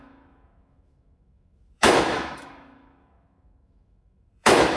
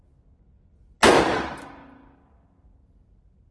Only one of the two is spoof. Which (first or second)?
first